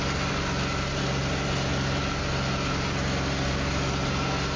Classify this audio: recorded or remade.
recorded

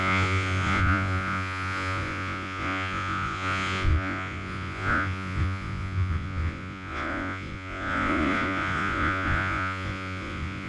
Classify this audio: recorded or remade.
remade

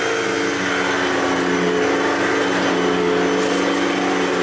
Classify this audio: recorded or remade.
recorded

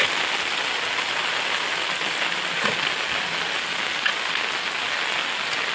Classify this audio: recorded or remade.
recorded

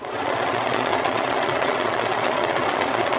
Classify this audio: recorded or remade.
remade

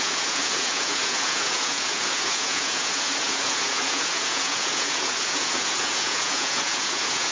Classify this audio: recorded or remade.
remade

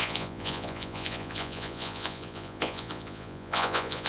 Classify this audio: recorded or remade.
remade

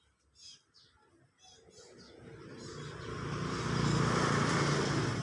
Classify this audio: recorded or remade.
recorded